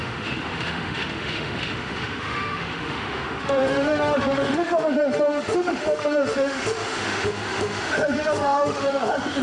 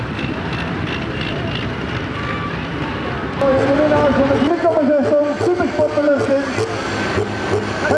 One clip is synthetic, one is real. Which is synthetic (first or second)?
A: first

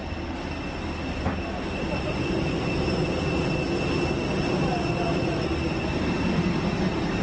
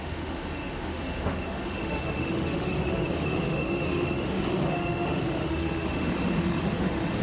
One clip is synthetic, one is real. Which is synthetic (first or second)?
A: second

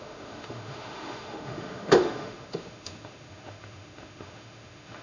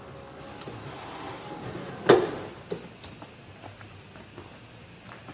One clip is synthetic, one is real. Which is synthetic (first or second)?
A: first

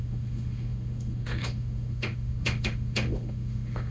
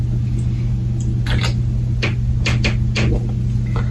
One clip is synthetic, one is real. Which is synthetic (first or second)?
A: first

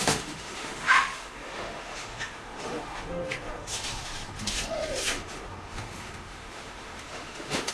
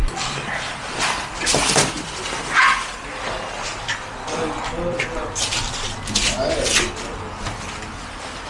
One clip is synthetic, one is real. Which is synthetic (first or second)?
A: first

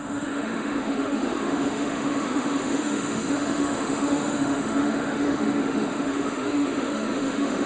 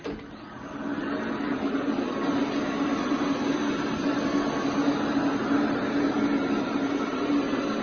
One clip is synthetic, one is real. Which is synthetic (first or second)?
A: first